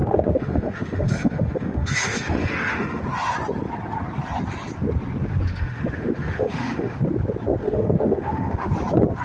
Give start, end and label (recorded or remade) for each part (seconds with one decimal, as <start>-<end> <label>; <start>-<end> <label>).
0.0-3.0 remade; 3.0-5.5 recorded; 5.5-7.0 remade; 7.0-7.6 recorded; 7.6-8.7 remade; 8.7-9.2 recorded